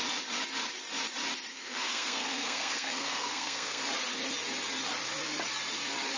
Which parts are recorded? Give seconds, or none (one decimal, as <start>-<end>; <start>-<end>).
0.0-1.5; 3.8-6.2